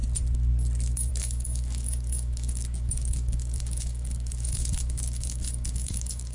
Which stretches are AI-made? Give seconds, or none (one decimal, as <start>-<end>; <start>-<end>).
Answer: 1.1-6.3